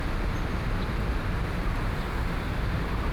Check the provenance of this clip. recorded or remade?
recorded